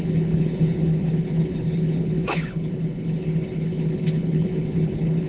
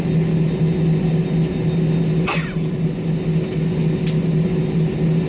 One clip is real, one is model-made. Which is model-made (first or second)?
first